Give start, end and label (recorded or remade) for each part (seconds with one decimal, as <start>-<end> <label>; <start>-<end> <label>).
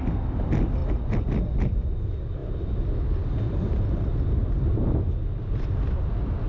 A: 0.0-6.5 recorded